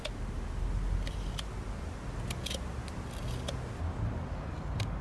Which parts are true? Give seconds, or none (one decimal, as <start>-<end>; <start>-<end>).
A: 0.0-5.0